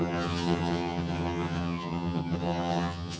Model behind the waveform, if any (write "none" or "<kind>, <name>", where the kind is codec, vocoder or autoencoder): vocoder, HiFi-GAN